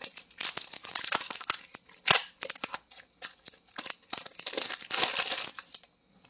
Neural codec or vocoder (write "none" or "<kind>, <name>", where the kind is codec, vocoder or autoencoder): none